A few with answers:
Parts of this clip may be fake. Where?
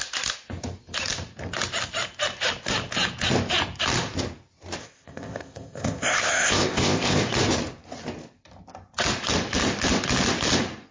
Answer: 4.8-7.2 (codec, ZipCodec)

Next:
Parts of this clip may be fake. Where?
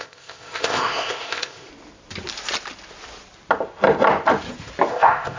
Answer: 0.0-1.7 (codec, ZipCodec); 4.9-5.4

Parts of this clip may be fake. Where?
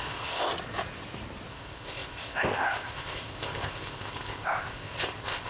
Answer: 0.0-0.5 (codec, ZipCodec); 1.5-5.5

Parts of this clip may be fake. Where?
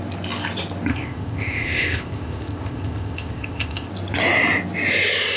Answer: 0.9-3.9 (codec, ZipCodec)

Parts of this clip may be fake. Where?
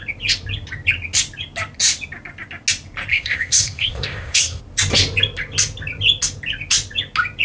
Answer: 3.1-4.6 (codec, ZipCodec)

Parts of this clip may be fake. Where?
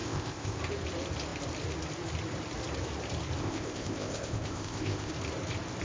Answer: 0.0-0.6 (codec, ZipCodec); 3.4-5.1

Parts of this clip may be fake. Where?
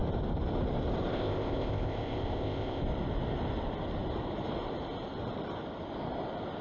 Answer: 1.1-2.8 (codec, ZipCodec)